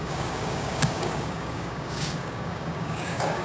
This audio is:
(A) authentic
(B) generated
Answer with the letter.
B